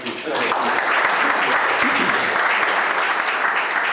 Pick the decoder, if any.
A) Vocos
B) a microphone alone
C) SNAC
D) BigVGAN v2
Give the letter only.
B